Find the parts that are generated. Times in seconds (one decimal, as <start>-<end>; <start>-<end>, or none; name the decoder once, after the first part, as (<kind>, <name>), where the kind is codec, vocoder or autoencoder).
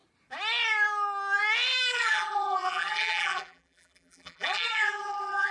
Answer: 1.9-5.5 (vocoder, BigVGAN v2)